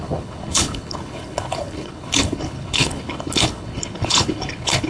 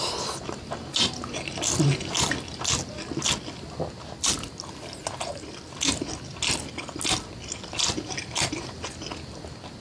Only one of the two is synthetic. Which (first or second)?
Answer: first